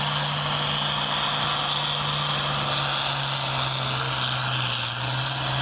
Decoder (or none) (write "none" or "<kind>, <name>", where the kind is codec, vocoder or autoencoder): none